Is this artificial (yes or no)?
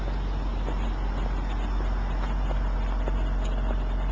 no